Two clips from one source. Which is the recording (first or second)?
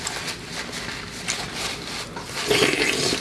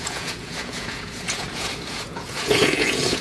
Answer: first